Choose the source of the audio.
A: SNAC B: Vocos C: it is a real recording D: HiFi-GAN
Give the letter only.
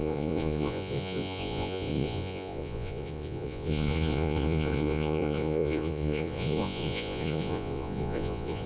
B